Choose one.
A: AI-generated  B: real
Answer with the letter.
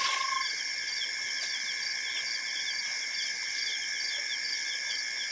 A